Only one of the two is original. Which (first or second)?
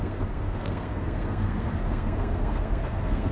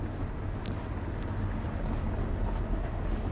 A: second